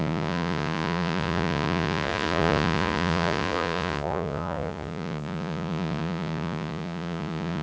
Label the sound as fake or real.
fake